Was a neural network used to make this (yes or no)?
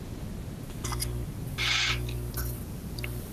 no